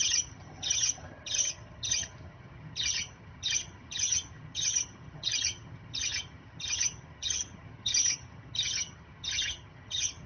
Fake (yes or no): yes